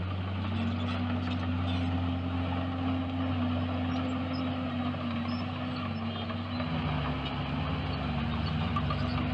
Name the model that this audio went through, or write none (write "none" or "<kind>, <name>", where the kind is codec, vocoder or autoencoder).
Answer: none